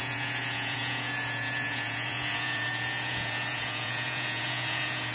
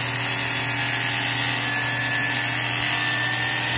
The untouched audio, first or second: second